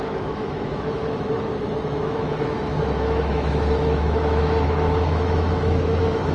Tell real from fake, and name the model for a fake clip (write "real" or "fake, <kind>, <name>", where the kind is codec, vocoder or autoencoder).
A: fake, autoencoder, DAC-VAE